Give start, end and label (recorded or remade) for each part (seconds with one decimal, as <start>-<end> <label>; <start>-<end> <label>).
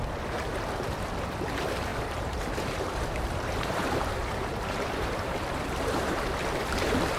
0.0-1.9 recorded; 1.9-6.2 remade; 6.2-7.2 recorded